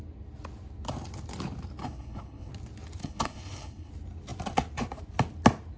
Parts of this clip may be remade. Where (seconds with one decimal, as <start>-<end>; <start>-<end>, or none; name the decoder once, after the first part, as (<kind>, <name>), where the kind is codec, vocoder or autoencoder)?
1.8-2.5 (codec, HILCodec); 3.0-3.9